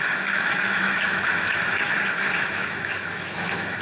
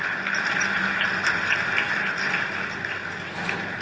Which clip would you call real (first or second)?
second